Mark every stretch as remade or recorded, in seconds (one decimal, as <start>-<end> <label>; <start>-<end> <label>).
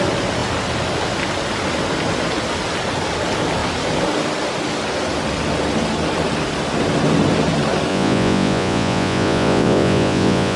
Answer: 0.0-7.9 recorded; 7.9-10.6 remade